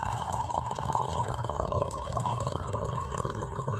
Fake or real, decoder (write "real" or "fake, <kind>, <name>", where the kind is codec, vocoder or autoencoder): fake, codec, SNAC